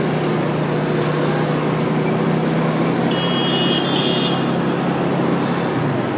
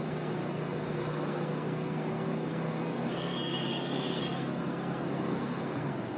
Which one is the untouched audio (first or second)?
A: first